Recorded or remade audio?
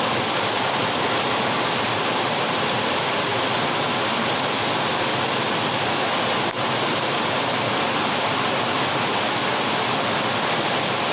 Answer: recorded